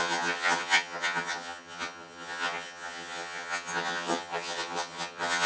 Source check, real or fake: fake